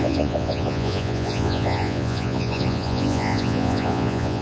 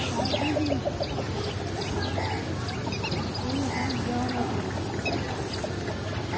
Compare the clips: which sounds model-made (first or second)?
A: first